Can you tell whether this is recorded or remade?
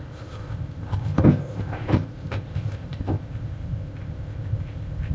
remade